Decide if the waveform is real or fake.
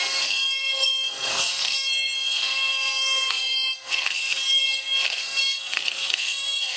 fake